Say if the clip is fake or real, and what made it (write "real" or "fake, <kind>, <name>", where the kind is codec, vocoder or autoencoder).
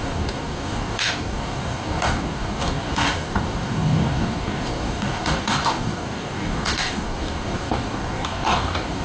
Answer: fake, codec, DAC